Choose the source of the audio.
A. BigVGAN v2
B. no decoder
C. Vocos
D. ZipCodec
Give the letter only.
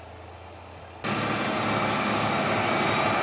B